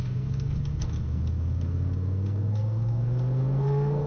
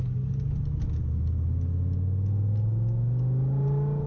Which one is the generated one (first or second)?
first